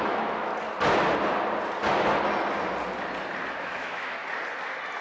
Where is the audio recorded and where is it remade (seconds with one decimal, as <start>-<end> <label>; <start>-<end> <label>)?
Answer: 0.0-0.5 remade; 0.5-3.5 recorded; 3.5-4.2 remade; 4.2-5.0 recorded

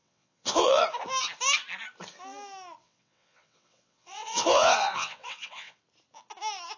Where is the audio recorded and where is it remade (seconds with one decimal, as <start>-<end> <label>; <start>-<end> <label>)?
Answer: 0.0-0.8 remade; 0.8-2.8 recorded; 2.8-5.8 remade; 5.8-6.8 recorded

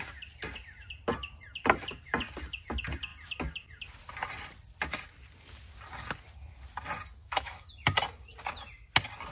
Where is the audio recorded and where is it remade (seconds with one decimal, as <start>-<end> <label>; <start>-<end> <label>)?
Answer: 0.0-7.2 recorded; 7.2-7.7 remade; 7.7-9.3 recorded